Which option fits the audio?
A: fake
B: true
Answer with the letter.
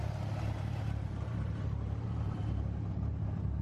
A